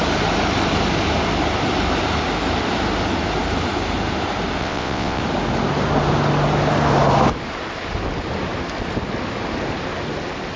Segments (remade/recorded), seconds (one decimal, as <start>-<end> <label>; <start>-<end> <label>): 0.0-4.6 recorded; 4.6-5.2 remade; 5.2-10.6 recorded